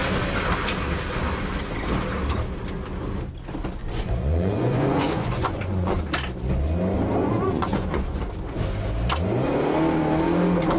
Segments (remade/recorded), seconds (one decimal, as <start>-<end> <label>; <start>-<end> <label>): 0.0-3.8 recorded; 3.8-6.0 remade; 6.0-7.2 recorded; 7.2-8.2 remade; 8.2-10.8 recorded